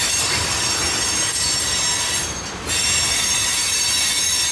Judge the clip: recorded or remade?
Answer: recorded